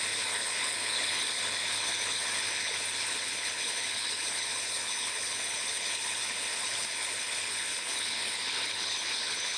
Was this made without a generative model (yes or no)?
no